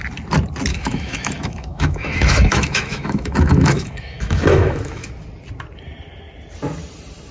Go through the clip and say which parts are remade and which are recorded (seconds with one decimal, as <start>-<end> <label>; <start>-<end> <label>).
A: 0.0-0.7 recorded; 0.7-5.1 remade; 5.1-7.3 recorded